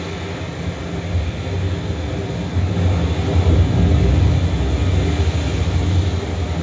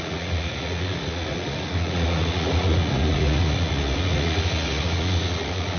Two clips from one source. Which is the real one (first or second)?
first